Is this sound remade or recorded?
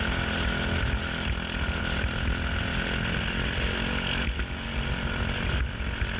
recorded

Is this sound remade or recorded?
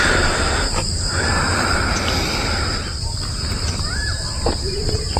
recorded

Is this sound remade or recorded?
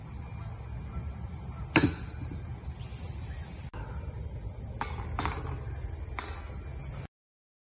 recorded